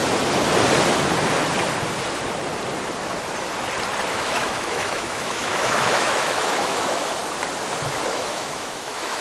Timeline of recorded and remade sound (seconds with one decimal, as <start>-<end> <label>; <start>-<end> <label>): 0.0-4.1 recorded; 4.1-7.2 remade; 7.2-8.1 recorded; 8.1-9.2 remade